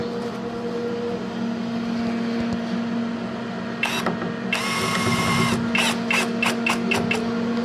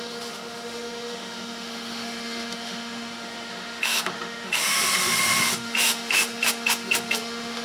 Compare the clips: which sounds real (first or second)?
first